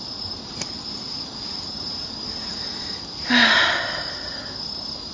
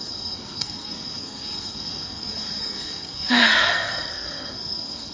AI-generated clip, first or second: second